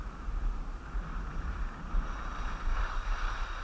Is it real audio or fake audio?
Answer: fake